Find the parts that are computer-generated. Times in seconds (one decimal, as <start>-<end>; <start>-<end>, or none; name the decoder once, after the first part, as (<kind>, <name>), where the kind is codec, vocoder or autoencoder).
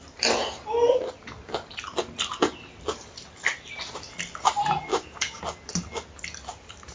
4.9-5.4 (codec, DAC)